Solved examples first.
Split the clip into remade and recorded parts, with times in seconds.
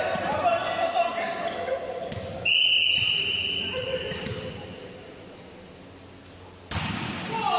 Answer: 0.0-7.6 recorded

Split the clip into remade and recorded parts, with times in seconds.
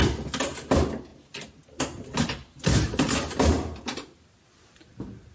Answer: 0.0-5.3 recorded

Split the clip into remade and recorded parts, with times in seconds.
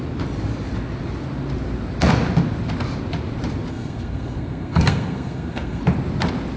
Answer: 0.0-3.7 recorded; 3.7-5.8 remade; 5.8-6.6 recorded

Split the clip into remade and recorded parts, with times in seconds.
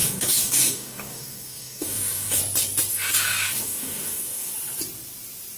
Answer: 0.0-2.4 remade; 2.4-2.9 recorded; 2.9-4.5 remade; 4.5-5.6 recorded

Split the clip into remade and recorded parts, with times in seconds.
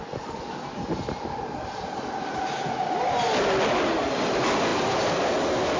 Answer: 0.0-5.8 recorded